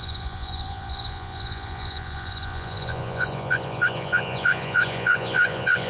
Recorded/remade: remade